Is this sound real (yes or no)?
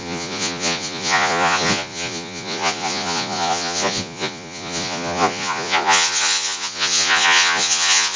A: no